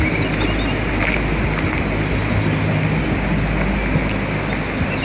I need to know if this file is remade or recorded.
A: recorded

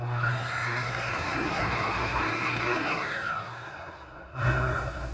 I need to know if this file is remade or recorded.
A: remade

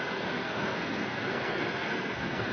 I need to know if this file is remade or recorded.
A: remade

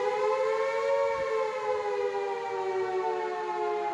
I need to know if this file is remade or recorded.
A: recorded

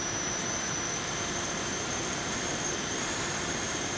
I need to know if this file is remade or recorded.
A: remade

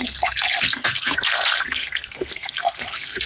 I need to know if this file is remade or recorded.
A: remade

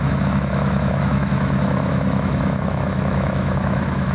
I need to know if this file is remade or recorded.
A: remade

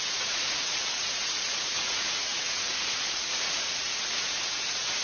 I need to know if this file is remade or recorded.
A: remade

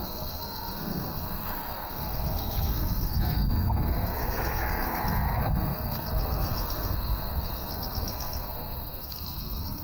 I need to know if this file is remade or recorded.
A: remade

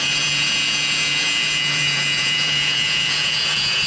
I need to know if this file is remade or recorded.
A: remade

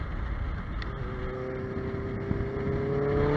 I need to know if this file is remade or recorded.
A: recorded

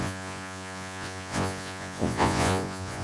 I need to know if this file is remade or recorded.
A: remade